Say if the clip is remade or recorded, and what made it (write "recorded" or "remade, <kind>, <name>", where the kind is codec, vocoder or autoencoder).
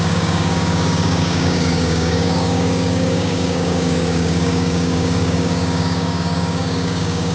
remade, codec, DAC